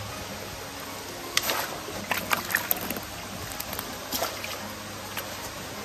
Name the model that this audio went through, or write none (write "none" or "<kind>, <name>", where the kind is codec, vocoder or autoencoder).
none